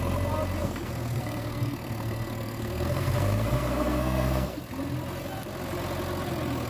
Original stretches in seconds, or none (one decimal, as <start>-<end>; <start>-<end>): 0.0-0.6; 4.6-6.7